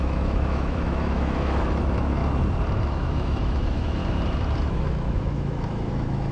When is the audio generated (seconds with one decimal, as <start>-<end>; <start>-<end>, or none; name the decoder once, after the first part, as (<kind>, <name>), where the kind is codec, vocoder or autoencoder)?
0.0-2.2 (autoencoder, DAC-VAE); 2.8-4.0; 4.8-6.3